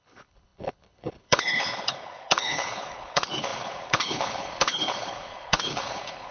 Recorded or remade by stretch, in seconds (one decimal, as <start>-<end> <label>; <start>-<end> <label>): 0.0-6.3 remade